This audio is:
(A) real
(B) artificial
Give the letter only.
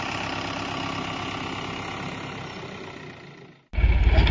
A